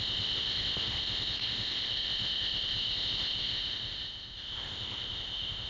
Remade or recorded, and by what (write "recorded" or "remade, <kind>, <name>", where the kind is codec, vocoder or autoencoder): remade, codec, ZipCodec